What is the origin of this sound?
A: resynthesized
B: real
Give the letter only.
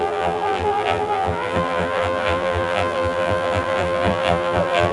A